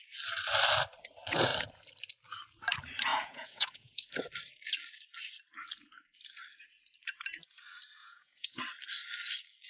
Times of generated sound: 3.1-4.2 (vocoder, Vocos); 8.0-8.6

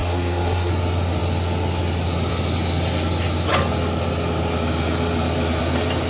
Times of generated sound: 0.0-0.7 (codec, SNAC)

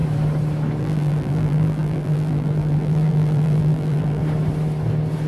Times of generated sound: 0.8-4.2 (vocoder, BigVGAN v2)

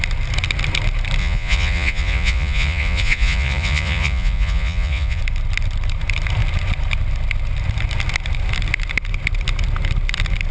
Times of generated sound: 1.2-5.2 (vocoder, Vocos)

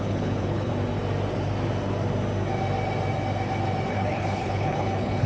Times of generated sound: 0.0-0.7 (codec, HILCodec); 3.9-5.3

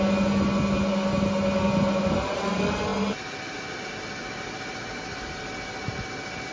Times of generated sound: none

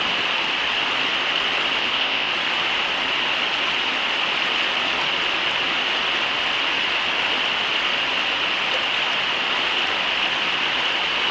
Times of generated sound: 1.8-2.3 (codec, ZipCodec)

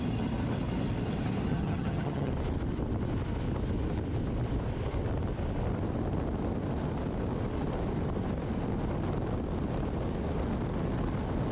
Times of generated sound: 1.5-2.3 (vocoder, HiFi-GAN)